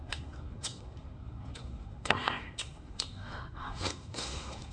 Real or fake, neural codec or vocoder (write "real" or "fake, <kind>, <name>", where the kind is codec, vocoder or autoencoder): fake, codec, SNAC